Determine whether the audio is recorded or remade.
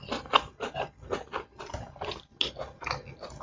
recorded